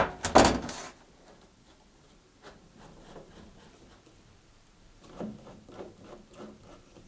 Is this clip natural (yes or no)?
yes